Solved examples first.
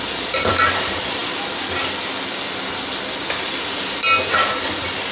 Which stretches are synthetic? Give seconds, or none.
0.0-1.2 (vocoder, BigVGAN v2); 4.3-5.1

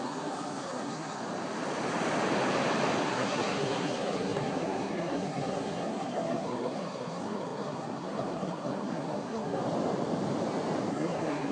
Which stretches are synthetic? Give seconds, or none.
0.0-1.2 (codec, SNAC); 3.0-9.6; 10.9-11.5

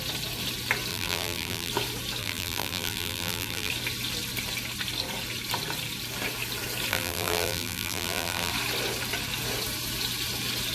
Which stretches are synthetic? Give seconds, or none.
0.9-1.7 (vocoder, BigVGAN v2); 2.2-3.7; 6.9-8.5

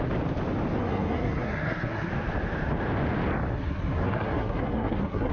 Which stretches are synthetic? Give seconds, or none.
0.8-2.1 (codec, SNAC); 3.5-5.3

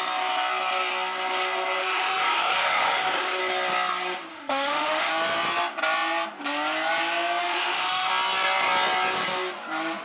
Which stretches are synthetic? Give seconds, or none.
1.8-3.4 (autoencoder, DAC-VAE); 4.3-5.1; 7.4-8.1

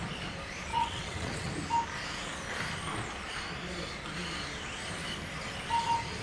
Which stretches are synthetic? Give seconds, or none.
0.7-1.5 (vocoder, WaveNeXt)

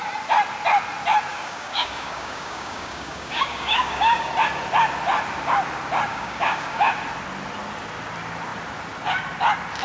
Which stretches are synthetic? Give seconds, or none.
1.3-4.3 (codec, DAC); 6.1-6.9